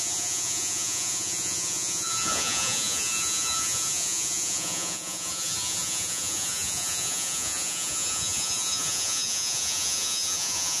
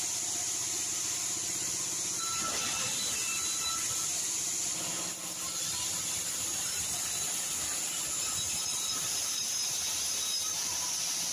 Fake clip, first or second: first